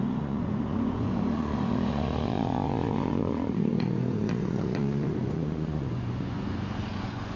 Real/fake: fake